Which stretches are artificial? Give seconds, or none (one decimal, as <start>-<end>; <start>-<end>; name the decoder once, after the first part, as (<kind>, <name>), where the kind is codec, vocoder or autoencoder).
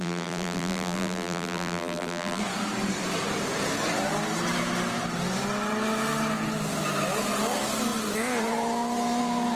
0.0-2.4 (vocoder, BigVGAN v2)